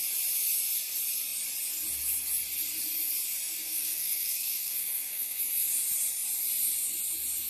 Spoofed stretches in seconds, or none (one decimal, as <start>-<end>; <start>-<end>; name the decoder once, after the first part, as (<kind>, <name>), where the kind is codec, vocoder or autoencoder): 3.6-5.4 (codec, SNAC)